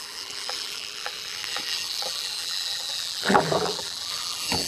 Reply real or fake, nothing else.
fake